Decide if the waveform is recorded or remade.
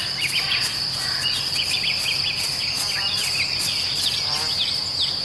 recorded